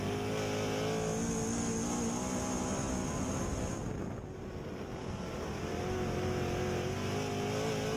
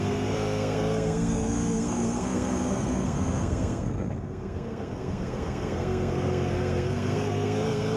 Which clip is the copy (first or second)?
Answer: second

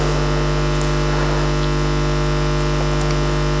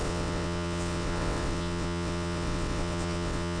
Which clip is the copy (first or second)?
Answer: second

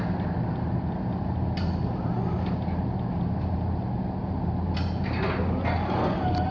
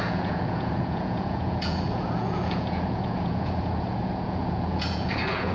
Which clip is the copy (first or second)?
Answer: second